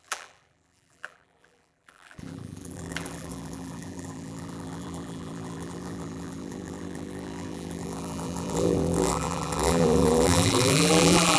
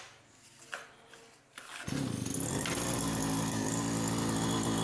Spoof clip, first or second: first